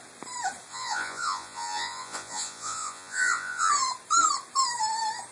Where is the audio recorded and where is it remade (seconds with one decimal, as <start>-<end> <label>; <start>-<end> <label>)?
0.0-0.7 recorded; 0.7-3.7 remade; 3.7-5.3 recorded

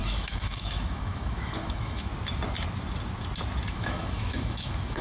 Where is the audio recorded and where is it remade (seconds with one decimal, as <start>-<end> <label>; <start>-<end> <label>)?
0.0-2.1 remade; 2.1-3.7 recorded; 3.7-5.0 remade

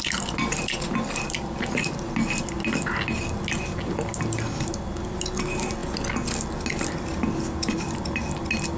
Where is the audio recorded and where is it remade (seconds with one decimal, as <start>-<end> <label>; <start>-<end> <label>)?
0.0-8.8 recorded